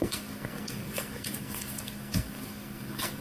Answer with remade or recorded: remade